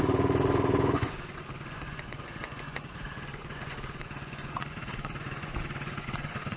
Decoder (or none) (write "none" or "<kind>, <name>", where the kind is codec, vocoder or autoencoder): vocoder, Vocos